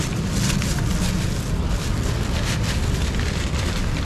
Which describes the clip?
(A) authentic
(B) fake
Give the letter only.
A